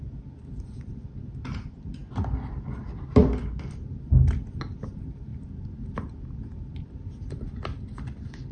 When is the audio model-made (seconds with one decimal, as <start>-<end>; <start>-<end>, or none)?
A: 3.2-3.9